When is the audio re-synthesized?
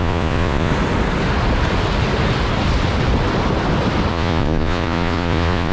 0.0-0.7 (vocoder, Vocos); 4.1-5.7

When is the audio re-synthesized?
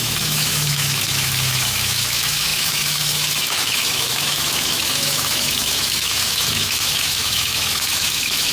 0.0-8.5 (autoencoder, DAC-VAE)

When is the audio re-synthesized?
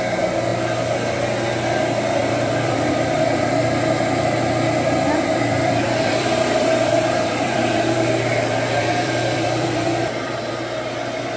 2.2-2.9 (vocoder, BigVGAN v2); 5.5-10.5